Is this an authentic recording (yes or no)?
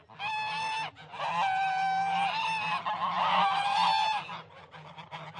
yes